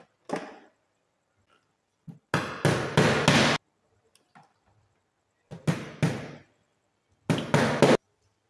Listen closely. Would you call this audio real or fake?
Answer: real